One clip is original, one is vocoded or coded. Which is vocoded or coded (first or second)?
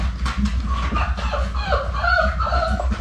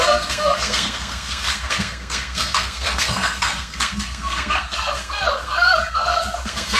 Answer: second